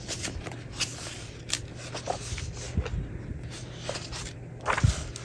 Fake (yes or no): no